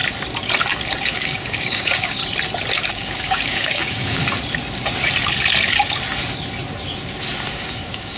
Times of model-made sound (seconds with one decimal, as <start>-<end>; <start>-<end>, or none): 1.0-2.2; 2.9-4.2; 7.5-8.2